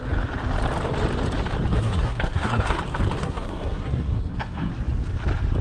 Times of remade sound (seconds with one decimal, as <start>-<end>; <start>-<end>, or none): 1.7-2.8; 3.2-4.7